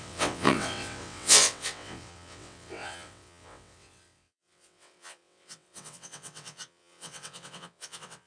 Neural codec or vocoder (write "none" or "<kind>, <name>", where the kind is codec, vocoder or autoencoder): vocoder, WaveNeXt